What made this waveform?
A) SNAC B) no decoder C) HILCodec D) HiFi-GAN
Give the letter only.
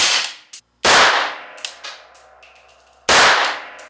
B